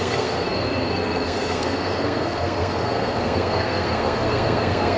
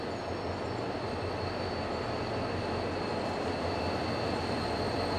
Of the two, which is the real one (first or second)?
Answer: second